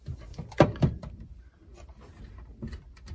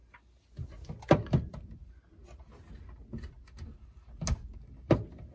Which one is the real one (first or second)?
second